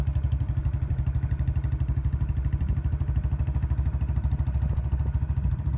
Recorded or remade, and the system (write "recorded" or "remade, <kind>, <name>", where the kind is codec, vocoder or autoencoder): recorded